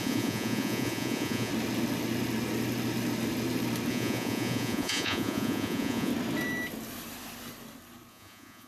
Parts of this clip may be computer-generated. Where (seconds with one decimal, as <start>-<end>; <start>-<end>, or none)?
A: 0.0-1.5; 3.9-6.1; 8.1-8.7